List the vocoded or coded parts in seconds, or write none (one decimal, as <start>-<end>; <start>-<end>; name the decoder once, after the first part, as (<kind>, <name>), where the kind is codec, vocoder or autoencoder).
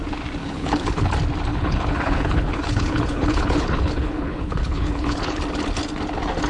0.4-1.1 (codec, HILCodec); 1.5-5.4